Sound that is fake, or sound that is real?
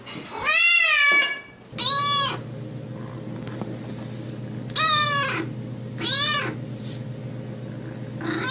real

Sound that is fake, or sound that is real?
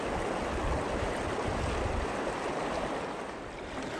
real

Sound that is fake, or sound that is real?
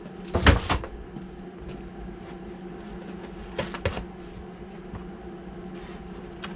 real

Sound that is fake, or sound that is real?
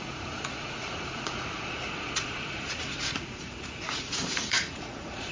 fake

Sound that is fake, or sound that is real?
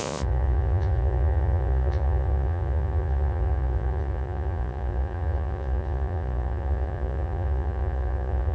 fake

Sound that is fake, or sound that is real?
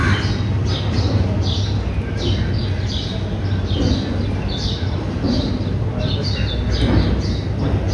real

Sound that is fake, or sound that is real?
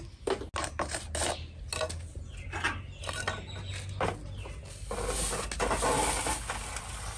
real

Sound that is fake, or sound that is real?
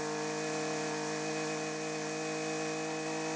real